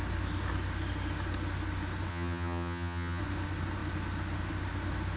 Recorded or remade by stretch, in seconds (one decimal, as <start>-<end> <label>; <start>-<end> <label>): 0.0-2.1 recorded; 2.1-3.2 remade; 3.2-5.2 recorded